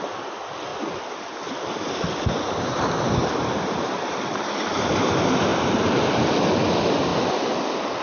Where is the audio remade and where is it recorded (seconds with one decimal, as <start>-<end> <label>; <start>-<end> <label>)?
0.0-0.7 recorded; 0.7-1.3 remade; 1.3-3.2 recorded; 3.2-4.9 remade; 4.9-5.5 recorded; 5.5-6.4 remade; 6.4-8.0 recorded